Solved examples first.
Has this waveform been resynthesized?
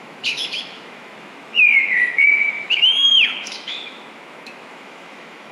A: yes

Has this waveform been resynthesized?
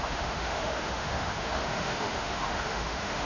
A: yes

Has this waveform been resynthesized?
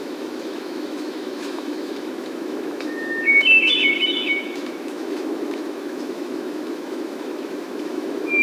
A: yes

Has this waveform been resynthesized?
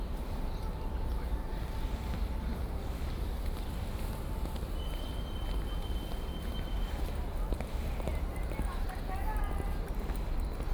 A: no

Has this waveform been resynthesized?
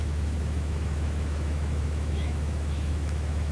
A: yes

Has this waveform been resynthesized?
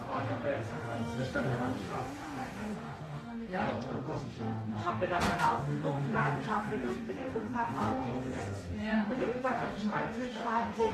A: yes